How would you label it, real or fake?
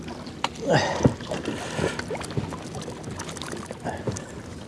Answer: real